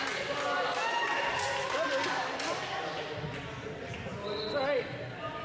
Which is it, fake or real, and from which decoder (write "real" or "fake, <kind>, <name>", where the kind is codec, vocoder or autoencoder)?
real